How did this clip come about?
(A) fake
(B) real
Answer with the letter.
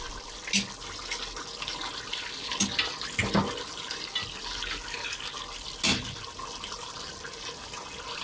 B